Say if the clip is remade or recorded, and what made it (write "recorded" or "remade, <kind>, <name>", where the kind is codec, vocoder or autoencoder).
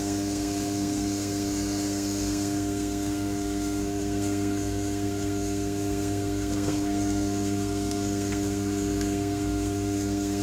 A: remade, codec, SNAC